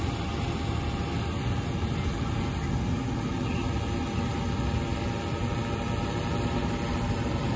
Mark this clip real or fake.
real